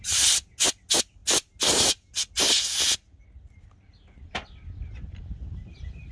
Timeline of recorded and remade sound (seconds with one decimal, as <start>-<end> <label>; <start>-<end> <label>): 0.0-6.1 recorded